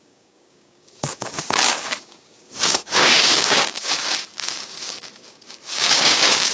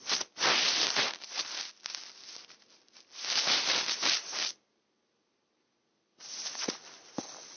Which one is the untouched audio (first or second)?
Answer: second